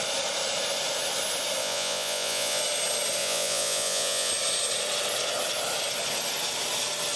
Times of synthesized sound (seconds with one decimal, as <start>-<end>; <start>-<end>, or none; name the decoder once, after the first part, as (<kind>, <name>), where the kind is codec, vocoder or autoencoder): 1.6-2.6 (vocoder, Vocos); 3.2-4.3